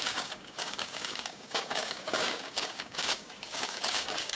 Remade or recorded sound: remade